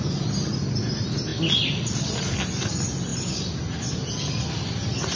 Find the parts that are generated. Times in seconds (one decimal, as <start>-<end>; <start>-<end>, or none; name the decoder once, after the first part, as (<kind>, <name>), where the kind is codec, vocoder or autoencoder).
none